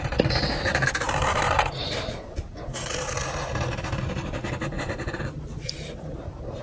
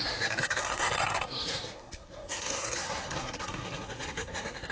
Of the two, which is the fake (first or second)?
second